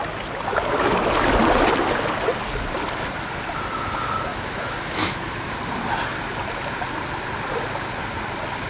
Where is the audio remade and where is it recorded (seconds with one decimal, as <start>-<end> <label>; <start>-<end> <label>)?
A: 0.0-4.3 recorded; 4.3-5.5 remade; 5.5-8.7 recorded

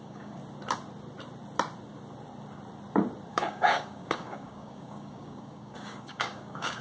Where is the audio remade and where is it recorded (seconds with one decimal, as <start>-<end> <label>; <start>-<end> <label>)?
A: 0.0-0.4 remade; 0.4-3.3 recorded; 3.3-6.8 remade